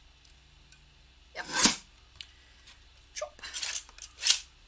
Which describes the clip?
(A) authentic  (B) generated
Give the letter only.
A